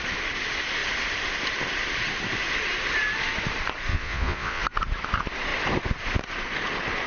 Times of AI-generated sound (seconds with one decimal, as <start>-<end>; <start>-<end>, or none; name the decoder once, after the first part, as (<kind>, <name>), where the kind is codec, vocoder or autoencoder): 3.9-4.6 (vocoder, Vocos)